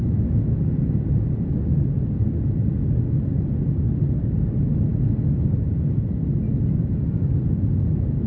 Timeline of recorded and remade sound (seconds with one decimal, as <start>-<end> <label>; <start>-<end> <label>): 0.0-8.3 recorded